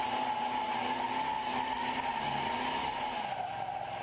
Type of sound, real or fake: real